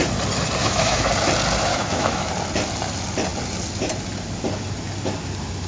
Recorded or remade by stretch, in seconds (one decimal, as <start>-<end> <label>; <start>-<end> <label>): 0.0-0.6 recorded; 0.6-1.1 remade; 1.1-1.7 recorded; 1.7-2.3 remade; 2.3-5.7 recorded